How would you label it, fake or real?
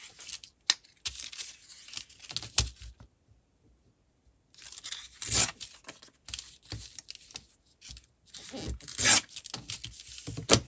real